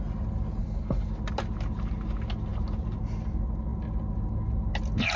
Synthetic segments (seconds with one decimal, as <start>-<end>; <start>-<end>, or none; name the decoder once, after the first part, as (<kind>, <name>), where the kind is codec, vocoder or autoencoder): 0.6-1.1 (codec, HILCodec)